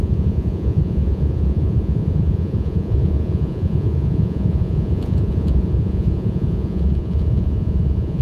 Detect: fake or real fake